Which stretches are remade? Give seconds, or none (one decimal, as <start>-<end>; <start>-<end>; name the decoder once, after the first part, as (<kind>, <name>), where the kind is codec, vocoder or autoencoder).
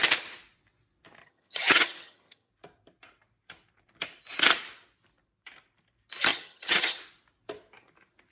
1.2-2.5 (vocoder, HiFi-GAN); 6.3-7.0